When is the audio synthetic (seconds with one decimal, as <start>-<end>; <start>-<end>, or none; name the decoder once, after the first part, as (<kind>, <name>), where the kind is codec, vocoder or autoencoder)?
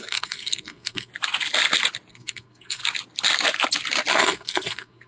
0.0-1.1 (codec, SNAC); 2.1-2.8; 4.1-5.1